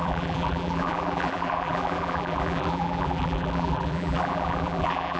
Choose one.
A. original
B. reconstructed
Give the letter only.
B